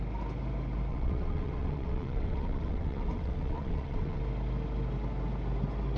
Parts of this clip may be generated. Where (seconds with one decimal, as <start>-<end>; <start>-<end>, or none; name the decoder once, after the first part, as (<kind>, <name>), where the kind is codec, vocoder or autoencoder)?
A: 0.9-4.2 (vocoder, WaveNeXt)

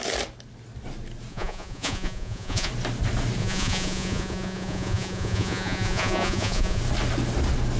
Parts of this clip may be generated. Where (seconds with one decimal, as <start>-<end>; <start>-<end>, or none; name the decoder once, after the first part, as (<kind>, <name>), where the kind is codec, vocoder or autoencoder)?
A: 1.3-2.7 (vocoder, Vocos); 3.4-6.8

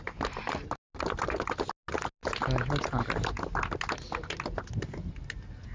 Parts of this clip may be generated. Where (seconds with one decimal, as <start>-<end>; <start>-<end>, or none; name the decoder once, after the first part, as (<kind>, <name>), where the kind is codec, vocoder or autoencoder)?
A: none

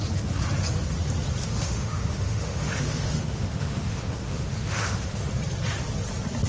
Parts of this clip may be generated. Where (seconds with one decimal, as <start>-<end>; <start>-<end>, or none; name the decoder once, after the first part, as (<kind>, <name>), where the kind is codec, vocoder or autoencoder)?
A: 1.4-5.3 (autoencoder, DAC-VAE)